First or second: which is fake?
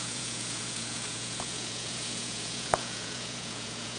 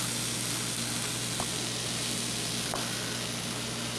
first